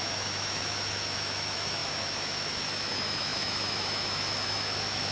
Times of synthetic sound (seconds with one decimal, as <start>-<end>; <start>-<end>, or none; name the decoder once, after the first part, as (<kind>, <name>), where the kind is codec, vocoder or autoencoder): 0.0-5.1 (autoencoder, DAC-VAE)